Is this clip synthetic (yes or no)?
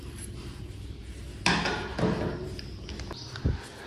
no